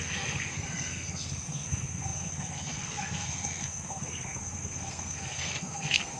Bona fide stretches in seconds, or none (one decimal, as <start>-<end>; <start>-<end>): none